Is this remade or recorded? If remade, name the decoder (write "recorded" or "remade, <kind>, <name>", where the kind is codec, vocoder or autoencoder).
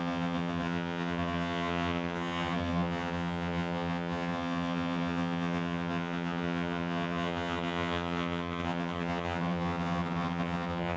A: remade, vocoder, HiFi-GAN